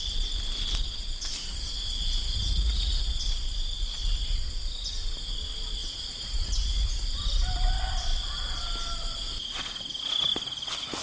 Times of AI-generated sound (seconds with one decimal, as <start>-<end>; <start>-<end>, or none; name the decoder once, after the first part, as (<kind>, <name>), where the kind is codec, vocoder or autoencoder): 2.4-3.2 (vocoder, Vocos); 5.8-6.9